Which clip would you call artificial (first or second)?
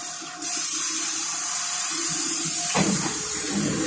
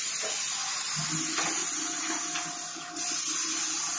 first